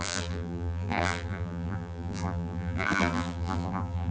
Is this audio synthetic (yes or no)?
yes